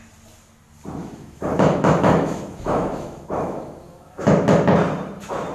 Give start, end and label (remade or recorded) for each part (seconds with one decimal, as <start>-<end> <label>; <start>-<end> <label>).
0.0-1.0 recorded; 1.0-4.3 remade; 4.3-5.5 recorded